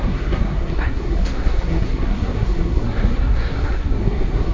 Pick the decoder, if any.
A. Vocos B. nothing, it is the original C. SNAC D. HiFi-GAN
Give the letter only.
C